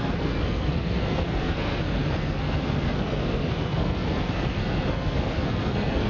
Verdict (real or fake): fake